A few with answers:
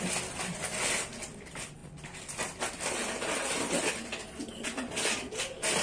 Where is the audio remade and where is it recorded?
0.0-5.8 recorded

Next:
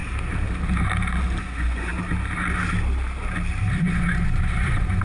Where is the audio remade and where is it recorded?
0.0-1.4 recorded; 1.4-1.9 remade; 1.9-3.8 recorded; 3.8-5.0 remade

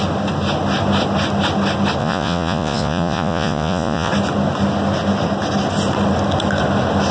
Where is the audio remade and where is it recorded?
0.0-2.0 recorded; 2.0-4.1 remade; 4.1-7.1 recorded

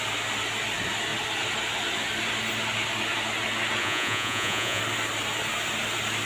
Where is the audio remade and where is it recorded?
0.0-3.8 recorded; 3.8-4.8 remade; 4.8-6.3 recorded

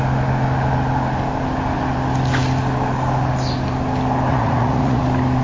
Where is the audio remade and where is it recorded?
0.0-4.3 recorded; 4.3-5.0 remade; 5.0-5.4 recorded

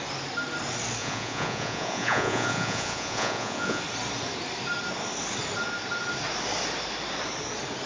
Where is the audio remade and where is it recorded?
0.0-1.0 recorded; 1.0-3.8 remade; 3.8-7.9 recorded